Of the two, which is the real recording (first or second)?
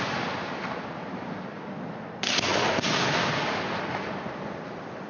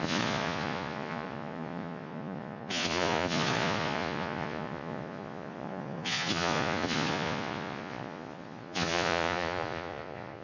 first